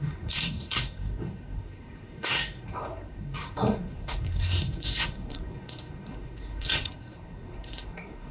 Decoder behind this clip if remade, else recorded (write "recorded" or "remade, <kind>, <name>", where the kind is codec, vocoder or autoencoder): remade, codec, SNAC